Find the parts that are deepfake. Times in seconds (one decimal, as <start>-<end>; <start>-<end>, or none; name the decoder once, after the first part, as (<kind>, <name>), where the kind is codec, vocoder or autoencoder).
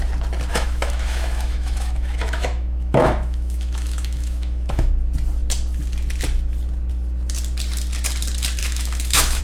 0.5-4.9 (autoencoder, DAC-VAE); 8.6-9.4